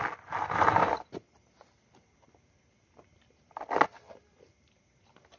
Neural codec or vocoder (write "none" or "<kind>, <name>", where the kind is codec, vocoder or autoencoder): none